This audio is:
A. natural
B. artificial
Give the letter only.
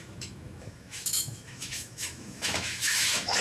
B